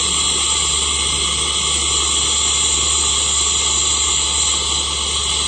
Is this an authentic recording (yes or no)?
yes